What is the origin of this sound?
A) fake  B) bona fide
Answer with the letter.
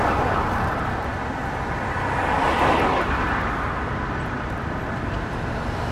B